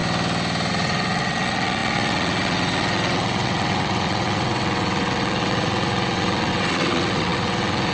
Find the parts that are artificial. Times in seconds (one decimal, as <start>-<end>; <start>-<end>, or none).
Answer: 0.7-7.9